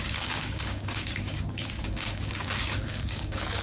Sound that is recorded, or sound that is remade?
remade